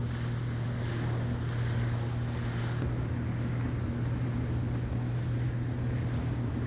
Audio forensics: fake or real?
real